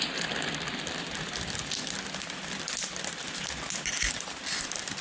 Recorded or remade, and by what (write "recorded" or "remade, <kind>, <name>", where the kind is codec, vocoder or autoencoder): recorded